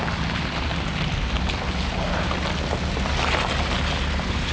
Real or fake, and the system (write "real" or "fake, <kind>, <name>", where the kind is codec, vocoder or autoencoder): real